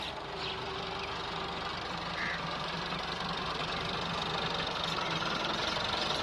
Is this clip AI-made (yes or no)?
no